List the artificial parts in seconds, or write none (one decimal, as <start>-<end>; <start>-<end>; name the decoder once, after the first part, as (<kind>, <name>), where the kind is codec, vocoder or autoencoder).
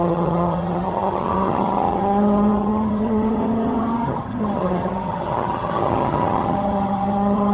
0.0-7.5 (vocoder, HiFi-GAN)